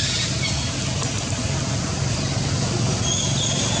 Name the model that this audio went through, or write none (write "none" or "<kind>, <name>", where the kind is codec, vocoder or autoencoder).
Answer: none